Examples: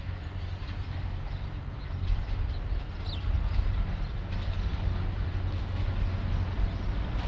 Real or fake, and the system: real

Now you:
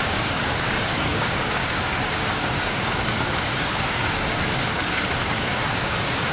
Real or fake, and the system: fake, codec, DAC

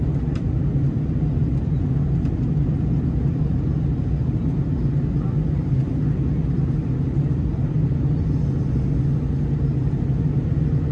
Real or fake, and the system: real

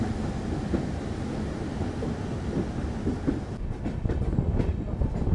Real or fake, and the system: real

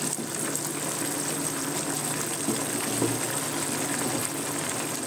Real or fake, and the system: real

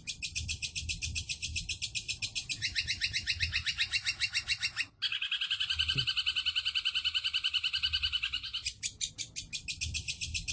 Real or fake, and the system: real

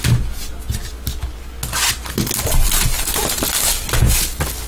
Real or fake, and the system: real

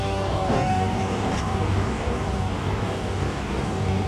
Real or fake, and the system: fake, codec, DAC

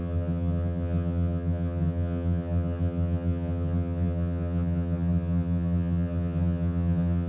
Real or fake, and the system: fake, vocoder, HiFi-GAN